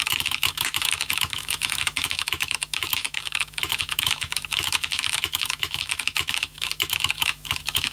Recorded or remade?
remade